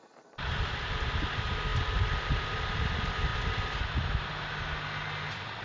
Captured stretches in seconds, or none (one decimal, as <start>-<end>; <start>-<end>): 0.0-5.6